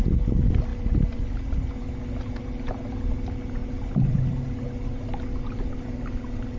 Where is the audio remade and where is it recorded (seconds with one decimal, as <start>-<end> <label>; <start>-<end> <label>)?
0.0-6.6 recorded